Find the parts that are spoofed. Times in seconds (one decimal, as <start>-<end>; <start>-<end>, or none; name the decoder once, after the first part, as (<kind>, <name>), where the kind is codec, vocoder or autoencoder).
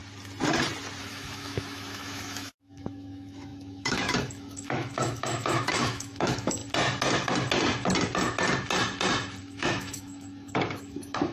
1.0-6.6 (autoencoder, DAC-VAE); 9.4-11.3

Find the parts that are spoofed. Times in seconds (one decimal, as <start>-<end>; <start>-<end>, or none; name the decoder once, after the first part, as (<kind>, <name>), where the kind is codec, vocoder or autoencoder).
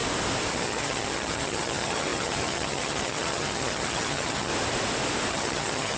0.5-4.5 (vocoder, HiFi-GAN); 5.3-6.0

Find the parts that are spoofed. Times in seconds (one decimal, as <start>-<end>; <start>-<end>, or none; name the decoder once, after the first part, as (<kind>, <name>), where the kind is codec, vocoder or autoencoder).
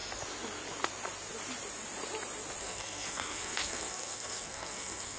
2.6-5.2 (codec, SNAC)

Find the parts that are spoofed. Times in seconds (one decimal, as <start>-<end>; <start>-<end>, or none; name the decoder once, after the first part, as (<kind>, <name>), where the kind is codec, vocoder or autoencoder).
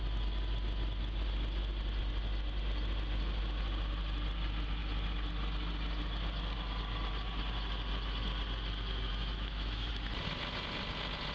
9.1-9.9 (autoencoder, DAC-VAE)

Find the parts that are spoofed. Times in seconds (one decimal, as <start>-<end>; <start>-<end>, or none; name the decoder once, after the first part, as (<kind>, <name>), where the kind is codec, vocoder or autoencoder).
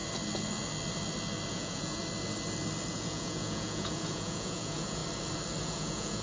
1.5-2.0 (vocoder, Vocos); 2.9-5.0; 5.6-6.2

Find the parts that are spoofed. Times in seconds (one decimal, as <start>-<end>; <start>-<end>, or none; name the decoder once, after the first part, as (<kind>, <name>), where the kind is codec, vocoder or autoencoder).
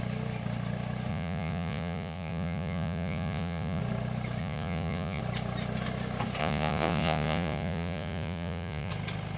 1.1-3.8 (vocoder, Vocos); 4.4-5.2; 6.4-8.9